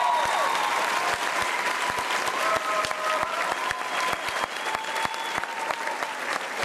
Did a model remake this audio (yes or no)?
no